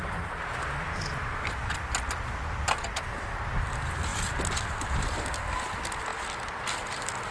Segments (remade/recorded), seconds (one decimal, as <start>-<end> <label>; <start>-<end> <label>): 0.0-7.3 recorded